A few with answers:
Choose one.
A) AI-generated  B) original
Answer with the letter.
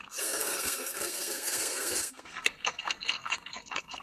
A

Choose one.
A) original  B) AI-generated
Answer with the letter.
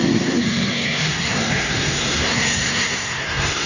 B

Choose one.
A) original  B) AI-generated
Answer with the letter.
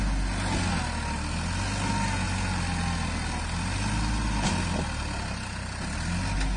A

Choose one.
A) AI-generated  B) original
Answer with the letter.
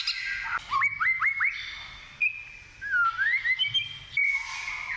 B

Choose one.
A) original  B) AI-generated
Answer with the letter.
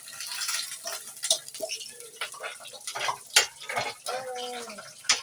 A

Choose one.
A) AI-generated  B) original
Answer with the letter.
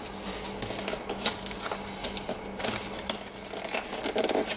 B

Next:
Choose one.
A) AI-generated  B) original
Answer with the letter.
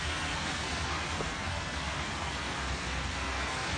A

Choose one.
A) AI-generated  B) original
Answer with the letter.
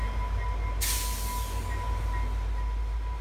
B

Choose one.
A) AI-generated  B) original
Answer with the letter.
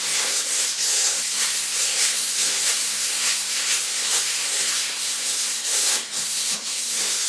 A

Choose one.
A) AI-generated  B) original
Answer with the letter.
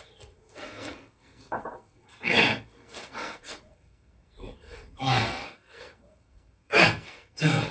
A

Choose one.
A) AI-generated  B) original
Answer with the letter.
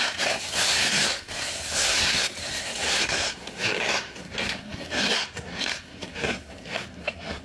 A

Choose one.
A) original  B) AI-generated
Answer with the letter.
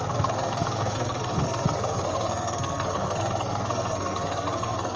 B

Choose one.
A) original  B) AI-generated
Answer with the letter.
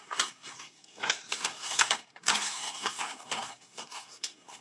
B